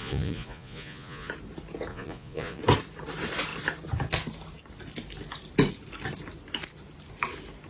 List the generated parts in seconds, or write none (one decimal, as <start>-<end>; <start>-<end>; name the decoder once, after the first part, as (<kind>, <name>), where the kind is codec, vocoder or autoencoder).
0.0-1.3 (vocoder, Vocos); 1.9-2.6